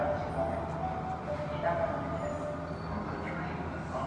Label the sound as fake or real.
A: real